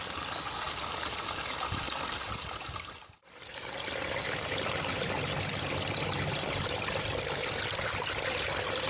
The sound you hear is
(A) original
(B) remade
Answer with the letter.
A